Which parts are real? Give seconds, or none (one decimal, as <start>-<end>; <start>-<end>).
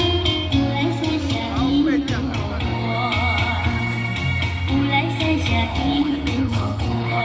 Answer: 0.0-5.7